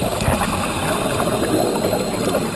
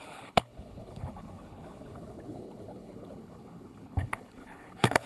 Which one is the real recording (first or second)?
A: first